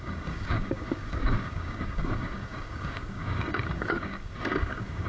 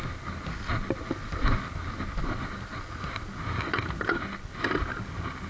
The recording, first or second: second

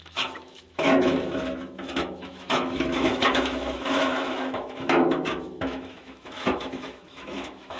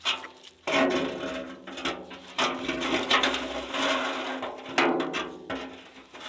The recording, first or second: second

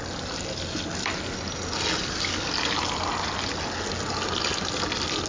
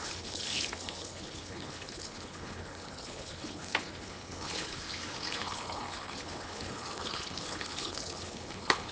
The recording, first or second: first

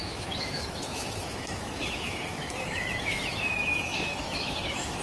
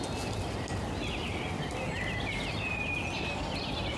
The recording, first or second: second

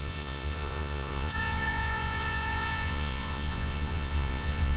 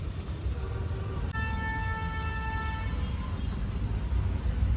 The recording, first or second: second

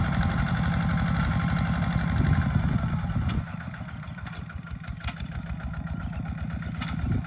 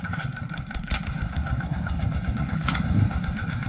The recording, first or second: first